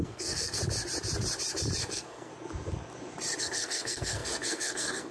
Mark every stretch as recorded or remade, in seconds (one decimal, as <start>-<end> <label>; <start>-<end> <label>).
0.0-0.6 remade; 0.6-1.8 recorded; 1.8-2.3 remade; 2.3-3.4 recorded; 3.4-5.1 remade